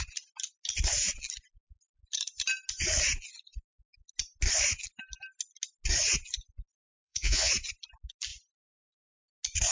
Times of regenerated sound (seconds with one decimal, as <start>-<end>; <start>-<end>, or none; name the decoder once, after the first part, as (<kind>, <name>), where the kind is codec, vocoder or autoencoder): 6.9-7.5 (vocoder, Vocos)